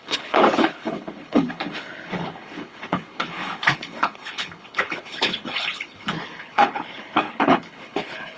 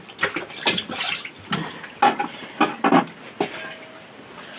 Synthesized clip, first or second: first